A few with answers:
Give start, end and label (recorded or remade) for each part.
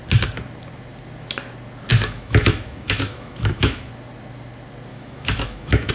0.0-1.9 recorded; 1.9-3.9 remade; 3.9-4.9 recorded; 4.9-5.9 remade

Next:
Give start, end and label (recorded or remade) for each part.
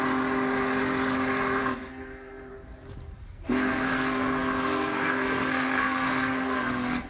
0.0-1.6 recorded; 1.6-2.5 remade; 2.5-3.2 recorded; 3.2-7.1 remade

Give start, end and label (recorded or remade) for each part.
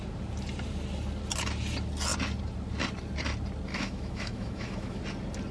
0.0-3.7 recorded; 3.7-5.0 remade; 5.0-5.5 recorded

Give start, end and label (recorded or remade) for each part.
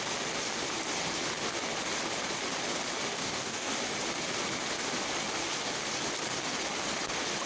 0.0-3.1 recorded; 3.1-3.7 remade; 3.7-7.5 recorded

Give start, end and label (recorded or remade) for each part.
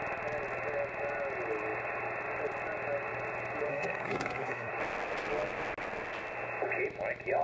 0.0-3.7 recorded; 3.7-4.7 remade; 4.7-7.4 recorded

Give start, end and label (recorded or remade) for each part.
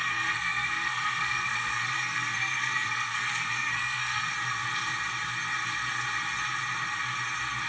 0.0-4.3 remade; 4.3-7.7 recorded